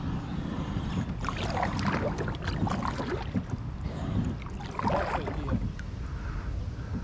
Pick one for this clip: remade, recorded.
recorded